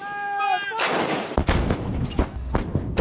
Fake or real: real